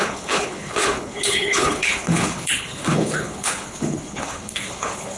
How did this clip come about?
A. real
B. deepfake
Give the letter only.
B